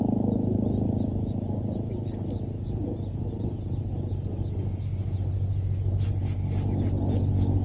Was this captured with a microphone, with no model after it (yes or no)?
yes